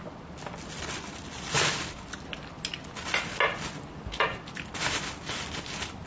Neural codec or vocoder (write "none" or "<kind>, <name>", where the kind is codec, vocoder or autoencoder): none